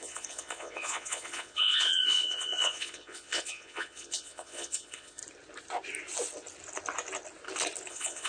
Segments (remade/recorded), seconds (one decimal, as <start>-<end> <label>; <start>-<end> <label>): 0.0-5.2 remade; 5.2-7.9 recorded; 7.9-8.3 remade